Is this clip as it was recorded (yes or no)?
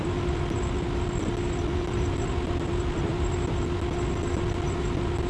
yes